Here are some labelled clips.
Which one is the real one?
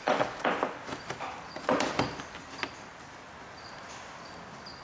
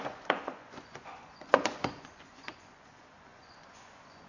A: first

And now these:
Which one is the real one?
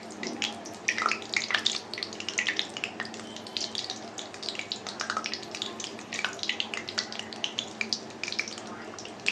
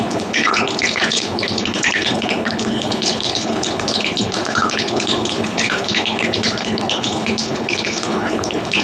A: first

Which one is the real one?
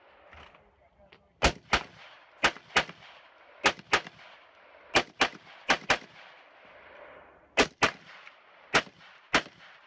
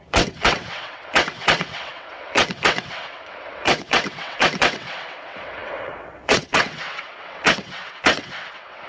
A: first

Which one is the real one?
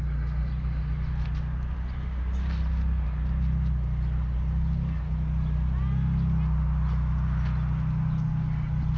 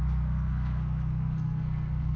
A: first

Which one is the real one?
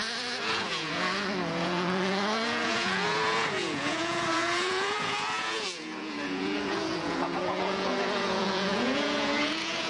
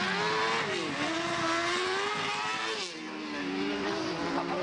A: second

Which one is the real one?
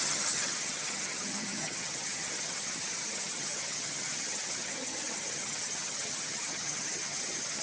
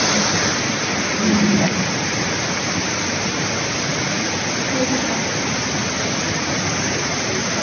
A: second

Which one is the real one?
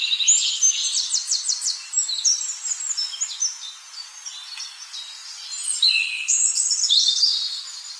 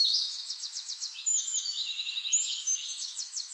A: first